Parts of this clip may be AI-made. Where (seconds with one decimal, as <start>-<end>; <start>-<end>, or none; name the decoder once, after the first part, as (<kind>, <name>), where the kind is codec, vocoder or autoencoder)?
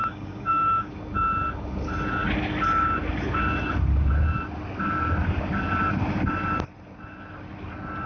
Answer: 0.0-0.9 (codec, DAC)